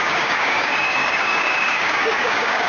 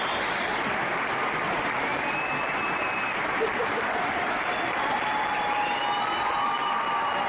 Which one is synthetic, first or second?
first